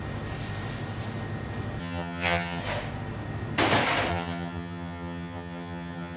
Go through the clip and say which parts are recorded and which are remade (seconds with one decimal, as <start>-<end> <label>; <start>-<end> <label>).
0.0-1.8 recorded; 1.8-2.6 remade; 2.6-4.1 recorded; 4.1-6.2 remade